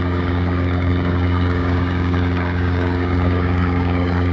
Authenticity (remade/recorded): remade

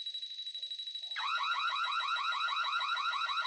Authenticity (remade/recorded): recorded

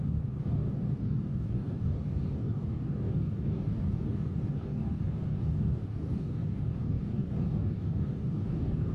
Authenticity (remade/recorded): remade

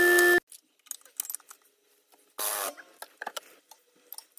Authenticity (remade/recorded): recorded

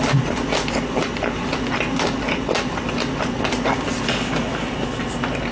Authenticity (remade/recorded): recorded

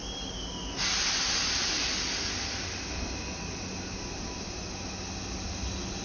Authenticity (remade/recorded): recorded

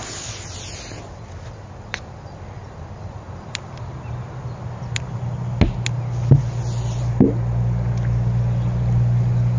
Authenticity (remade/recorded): recorded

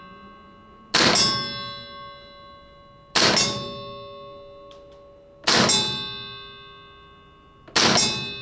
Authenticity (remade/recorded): recorded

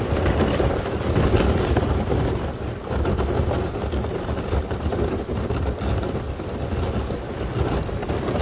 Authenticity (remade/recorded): recorded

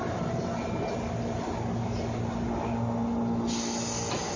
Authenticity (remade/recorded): recorded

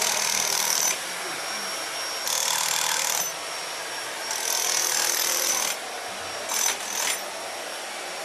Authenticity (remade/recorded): recorded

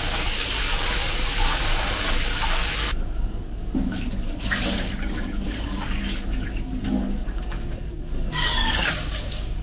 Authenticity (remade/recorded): remade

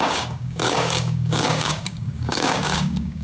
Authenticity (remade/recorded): remade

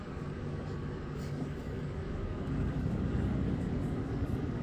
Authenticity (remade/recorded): remade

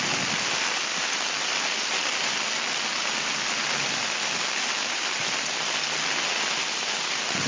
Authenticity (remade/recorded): recorded